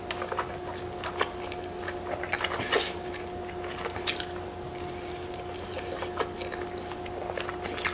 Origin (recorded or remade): recorded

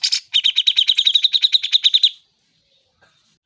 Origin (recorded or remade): recorded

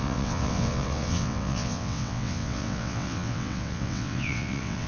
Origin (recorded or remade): remade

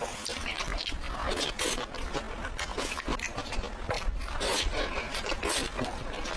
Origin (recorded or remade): recorded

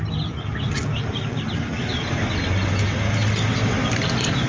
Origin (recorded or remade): recorded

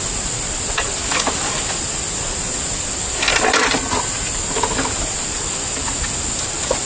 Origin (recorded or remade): recorded